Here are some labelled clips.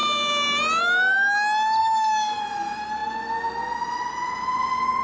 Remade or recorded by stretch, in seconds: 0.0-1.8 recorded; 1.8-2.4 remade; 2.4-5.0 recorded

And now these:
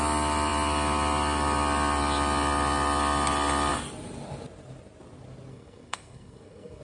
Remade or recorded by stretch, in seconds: 0.0-5.5 recorded; 5.5-6.8 remade

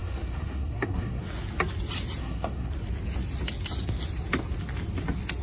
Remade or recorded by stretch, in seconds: 0.0-1.2 remade; 1.2-2.2 recorded; 2.2-2.7 remade; 2.7-5.4 recorded

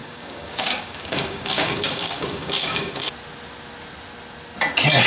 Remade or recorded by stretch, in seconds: 0.0-3.1 remade; 3.1-5.1 recorded

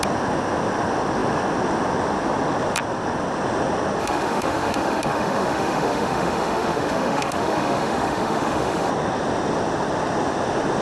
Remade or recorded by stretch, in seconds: 0.0-4.0 recorded; 4.0-8.9 remade; 8.9-10.8 recorded

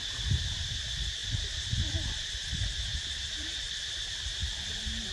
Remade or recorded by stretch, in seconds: 0.0-0.6 remade; 0.6-1.2 recorded; 1.2-4.3 remade; 4.3-5.1 recorded

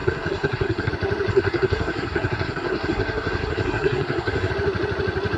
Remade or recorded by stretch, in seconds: 0.0-0.9 remade; 0.9-1.3 recorded; 1.3-4.5 remade; 4.5-5.4 recorded